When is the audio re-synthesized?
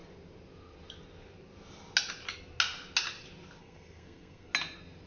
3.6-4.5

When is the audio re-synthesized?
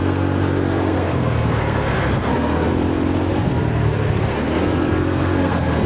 0.0-2.7; 3.3-5.9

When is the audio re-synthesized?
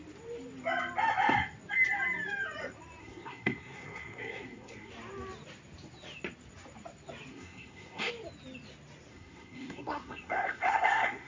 3.0-4.9; 7.3-8.1; 9.1-11.3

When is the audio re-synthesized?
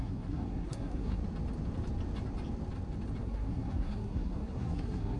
0.0-1.2; 3.2-5.2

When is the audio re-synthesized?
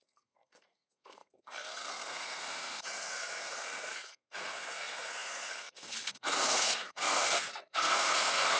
0.0-8.6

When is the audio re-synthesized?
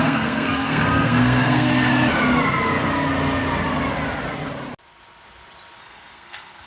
0.0-1.9; 5.8-6.7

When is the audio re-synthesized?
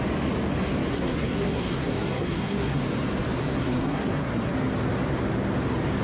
0.9-2.8; 3.4-4.5